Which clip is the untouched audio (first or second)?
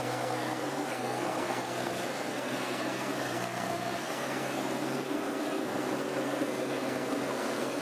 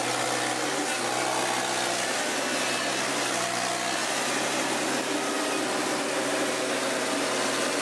second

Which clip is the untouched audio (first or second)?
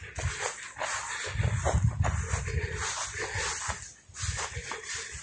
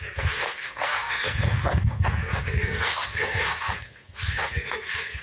first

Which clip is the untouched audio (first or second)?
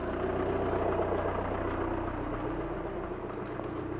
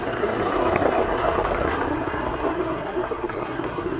first